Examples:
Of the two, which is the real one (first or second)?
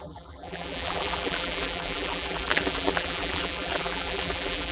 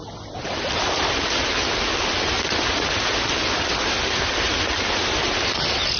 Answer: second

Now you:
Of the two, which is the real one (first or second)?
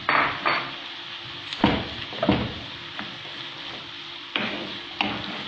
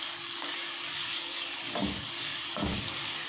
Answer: first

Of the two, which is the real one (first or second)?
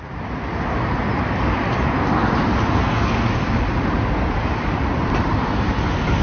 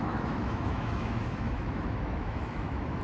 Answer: first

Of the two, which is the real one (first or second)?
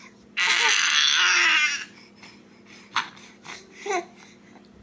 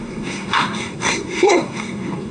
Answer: first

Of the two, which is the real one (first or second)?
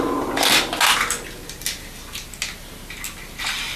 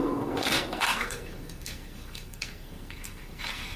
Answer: first